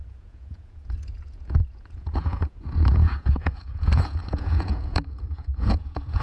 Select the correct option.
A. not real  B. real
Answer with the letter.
A